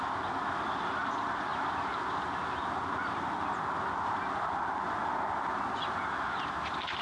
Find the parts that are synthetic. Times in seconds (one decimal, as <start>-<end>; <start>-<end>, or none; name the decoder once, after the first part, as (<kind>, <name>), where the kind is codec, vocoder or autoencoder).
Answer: none